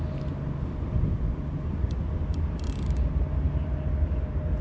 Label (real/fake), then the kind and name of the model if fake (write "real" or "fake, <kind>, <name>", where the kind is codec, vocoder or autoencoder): real